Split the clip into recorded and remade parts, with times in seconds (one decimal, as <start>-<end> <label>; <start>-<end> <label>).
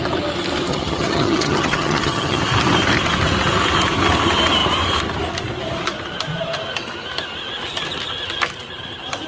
0.0-0.7 recorded; 0.7-2.4 remade; 2.4-9.3 recorded